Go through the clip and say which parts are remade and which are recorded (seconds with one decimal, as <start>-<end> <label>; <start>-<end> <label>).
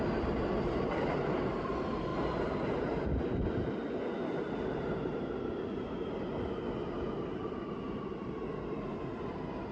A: 0.0-9.7 recorded